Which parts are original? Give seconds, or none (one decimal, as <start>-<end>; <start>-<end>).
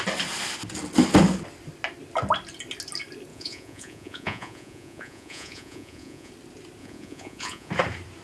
0.0-3.3; 6.3-6.8; 7.7-8.2